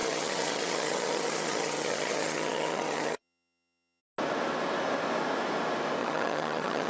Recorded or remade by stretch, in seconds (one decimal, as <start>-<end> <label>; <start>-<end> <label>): 0.0-4.0 remade; 4.0-6.0 recorded; 6.0-6.9 remade

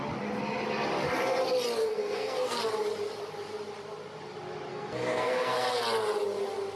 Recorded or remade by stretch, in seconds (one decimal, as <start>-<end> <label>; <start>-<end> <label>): 0.0-1.8 recorded; 1.8-2.6 remade; 2.6-4.7 recorded; 4.7-5.8 remade; 5.8-6.8 recorded